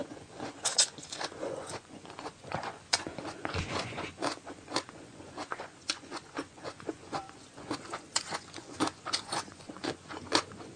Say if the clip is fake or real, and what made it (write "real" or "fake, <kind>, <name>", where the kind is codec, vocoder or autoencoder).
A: fake, vocoder, Vocos